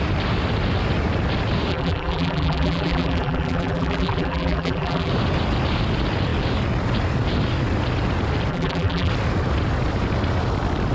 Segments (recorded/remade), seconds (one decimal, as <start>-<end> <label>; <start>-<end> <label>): 0.0-1.7 recorded; 1.7-5.1 remade; 5.1-8.5 recorded; 8.5-9.1 remade; 9.1-10.9 recorded